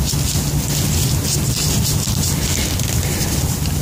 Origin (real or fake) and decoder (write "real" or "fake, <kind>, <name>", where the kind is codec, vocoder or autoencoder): real